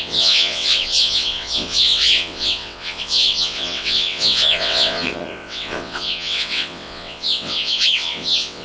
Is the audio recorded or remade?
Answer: remade